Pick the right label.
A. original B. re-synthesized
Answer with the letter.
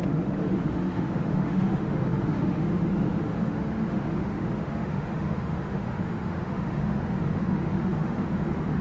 B